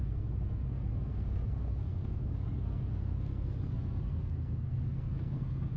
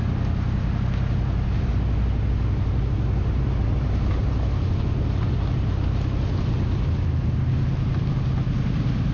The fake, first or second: first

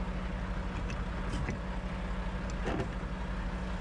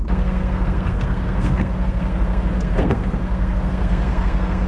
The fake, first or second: second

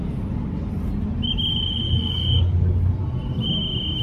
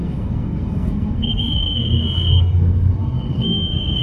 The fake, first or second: second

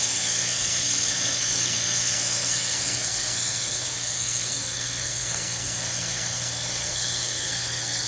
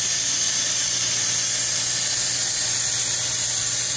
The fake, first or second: first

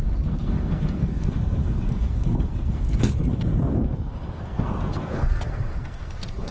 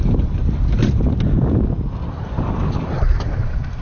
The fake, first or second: first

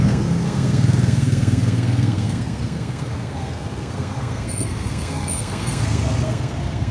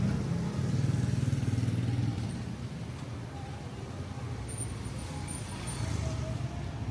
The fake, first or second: first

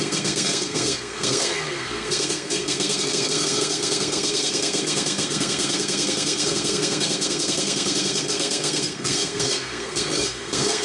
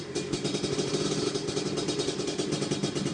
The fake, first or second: first